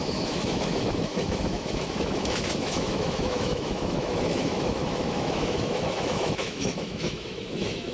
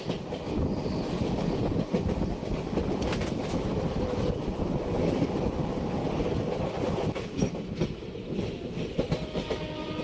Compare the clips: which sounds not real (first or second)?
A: first